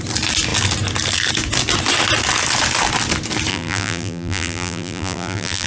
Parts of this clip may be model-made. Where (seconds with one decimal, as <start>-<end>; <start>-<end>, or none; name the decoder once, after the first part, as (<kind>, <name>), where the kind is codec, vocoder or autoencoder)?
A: 3.5-5.7 (vocoder, BigVGAN v2)